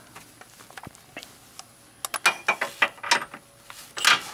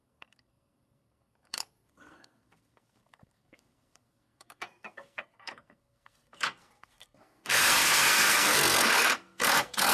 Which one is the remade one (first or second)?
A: second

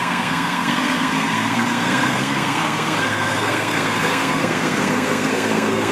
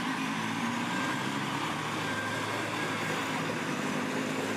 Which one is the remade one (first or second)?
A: first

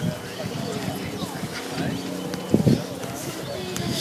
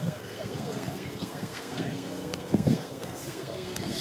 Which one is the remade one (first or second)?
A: second